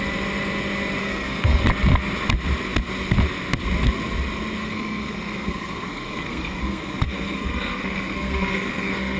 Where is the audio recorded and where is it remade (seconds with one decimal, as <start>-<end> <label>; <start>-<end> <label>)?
0.0-1.0 recorded; 1.0-1.6 remade; 1.6-4.6 recorded; 4.6-9.2 remade